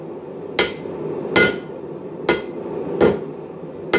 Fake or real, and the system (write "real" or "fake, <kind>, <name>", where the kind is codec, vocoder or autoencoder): real